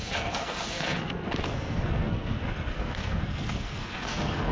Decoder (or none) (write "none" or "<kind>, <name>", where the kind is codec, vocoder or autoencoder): codec, SNAC